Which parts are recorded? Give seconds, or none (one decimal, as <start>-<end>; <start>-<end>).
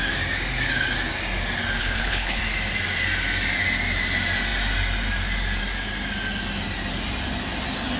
0.0-1.8; 2.4-8.0